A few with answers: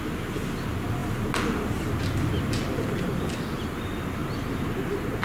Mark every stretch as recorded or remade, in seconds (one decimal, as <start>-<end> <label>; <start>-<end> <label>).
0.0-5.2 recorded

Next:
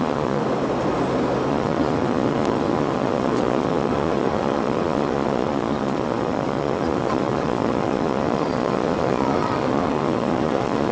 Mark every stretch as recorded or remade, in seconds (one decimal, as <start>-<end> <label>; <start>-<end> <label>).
0.0-0.4 remade; 0.4-1.5 recorded; 1.5-10.9 remade

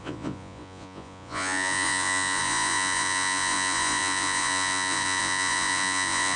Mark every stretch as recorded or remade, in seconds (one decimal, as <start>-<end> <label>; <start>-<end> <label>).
0.0-6.4 remade

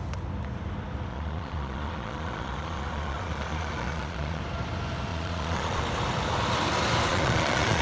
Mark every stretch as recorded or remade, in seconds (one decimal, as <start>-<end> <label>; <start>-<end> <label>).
0.0-1.1 recorded; 1.1-4.4 remade; 4.4-5.1 recorded; 5.1-5.8 remade; 5.8-7.1 recorded; 7.1-7.8 remade